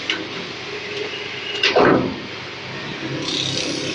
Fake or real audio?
real